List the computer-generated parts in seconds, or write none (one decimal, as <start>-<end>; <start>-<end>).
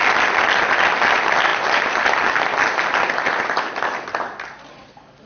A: none